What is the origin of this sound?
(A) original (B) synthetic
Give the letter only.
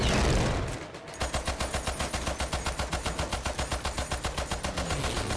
A